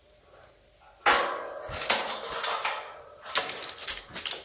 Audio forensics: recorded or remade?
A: recorded